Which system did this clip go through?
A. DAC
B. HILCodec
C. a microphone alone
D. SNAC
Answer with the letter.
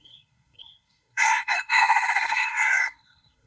D